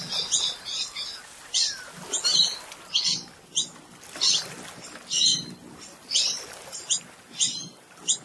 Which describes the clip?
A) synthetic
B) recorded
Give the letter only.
B